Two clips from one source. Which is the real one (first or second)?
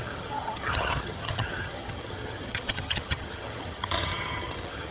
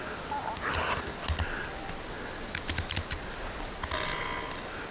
second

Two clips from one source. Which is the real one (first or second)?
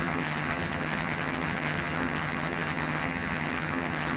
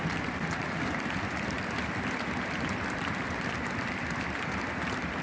second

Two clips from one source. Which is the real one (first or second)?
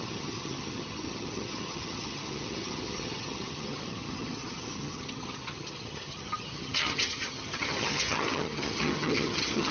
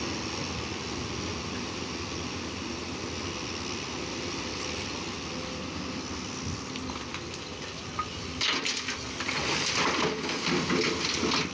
second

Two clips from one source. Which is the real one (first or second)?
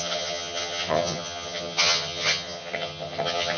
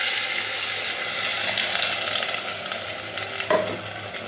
second